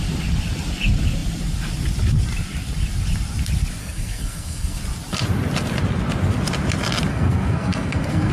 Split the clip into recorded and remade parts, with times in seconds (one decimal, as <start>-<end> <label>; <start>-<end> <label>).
0.0-3.8 recorded; 3.8-4.8 remade; 4.8-7.1 recorded; 7.1-8.3 remade